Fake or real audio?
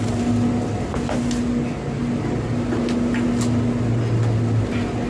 real